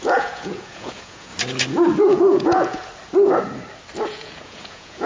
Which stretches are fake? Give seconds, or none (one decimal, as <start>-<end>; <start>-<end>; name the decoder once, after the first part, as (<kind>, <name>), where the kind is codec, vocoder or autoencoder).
0.0-1.3 (vocoder, Vocos); 2.0-2.9; 4.1-5.1